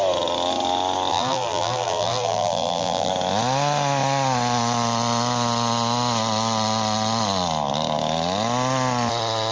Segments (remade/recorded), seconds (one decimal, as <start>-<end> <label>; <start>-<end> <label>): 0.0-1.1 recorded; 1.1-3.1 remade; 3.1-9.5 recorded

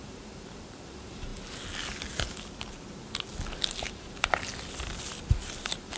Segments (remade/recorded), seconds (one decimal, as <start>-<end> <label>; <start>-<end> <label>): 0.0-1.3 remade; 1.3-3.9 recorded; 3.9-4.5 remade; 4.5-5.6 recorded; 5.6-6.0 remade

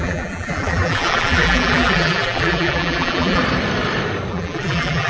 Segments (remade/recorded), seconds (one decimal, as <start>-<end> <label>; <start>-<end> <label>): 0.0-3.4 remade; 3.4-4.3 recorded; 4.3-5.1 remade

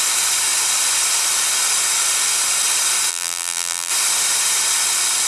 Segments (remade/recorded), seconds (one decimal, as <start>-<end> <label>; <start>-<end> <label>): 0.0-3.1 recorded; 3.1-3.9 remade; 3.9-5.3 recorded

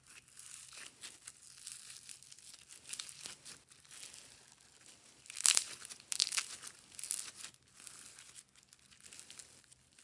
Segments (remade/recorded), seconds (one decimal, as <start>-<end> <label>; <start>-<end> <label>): 0.0-10.0 recorded